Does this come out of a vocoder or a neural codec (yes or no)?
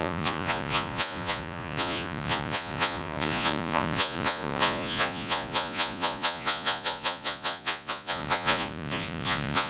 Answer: yes